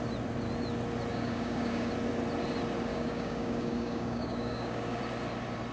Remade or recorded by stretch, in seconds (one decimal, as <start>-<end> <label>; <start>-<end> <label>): 0.0-1.1 recorded; 1.1-1.9 remade; 1.9-2.9 recorded; 2.9-5.0 remade; 5.0-5.7 recorded